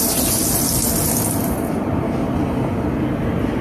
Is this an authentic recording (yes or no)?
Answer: yes